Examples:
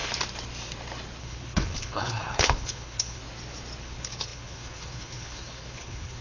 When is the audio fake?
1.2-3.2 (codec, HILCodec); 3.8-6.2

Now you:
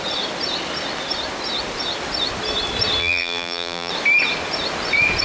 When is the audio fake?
3.0-3.9 (vocoder, BigVGAN v2)

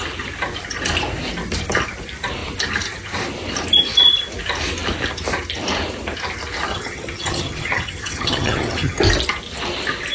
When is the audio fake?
6.7-9.0 (vocoder, HiFi-GAN)

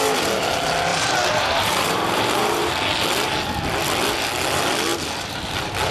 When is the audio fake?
0.9-2.7 (vocoder, BigVGAN v2)

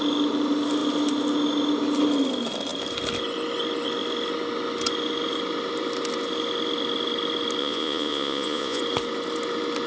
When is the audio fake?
7.6-8.8 (vocoder, Vocos)

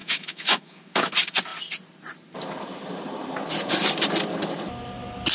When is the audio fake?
0.0-1.1 (autoencoder, DAC-VAE)